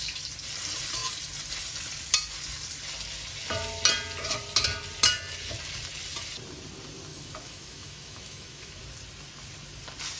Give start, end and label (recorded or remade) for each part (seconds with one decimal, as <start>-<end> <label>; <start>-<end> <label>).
0.0-7.1 recorded; 7.1-8.8 remade; 8.8-10.2 recorded